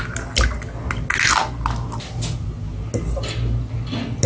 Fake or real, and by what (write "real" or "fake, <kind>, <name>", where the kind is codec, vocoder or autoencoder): real